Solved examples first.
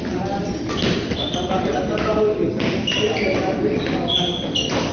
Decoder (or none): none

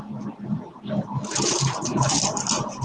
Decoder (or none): none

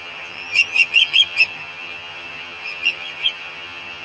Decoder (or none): vocoder, HiFi-GAN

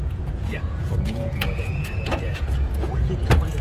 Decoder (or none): vocoder, Vocos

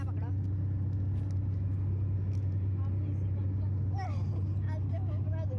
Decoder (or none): none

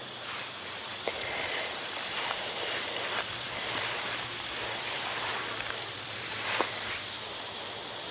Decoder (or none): vocoder, BigVGAN v2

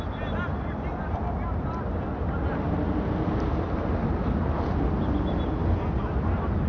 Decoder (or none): none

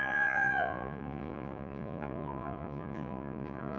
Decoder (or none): vocoder, Vocos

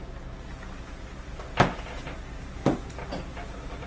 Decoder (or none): none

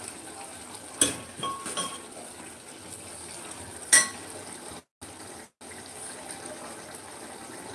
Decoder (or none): none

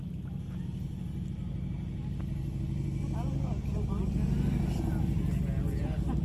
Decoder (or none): none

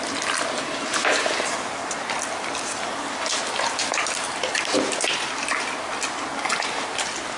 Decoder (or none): none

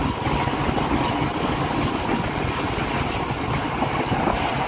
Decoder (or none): none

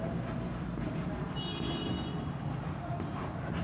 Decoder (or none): vocoder, BigVGAN v2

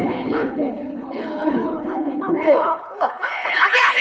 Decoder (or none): codec, HILCodec